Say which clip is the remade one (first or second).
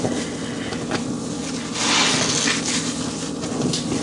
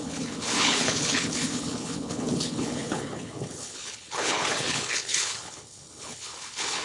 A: second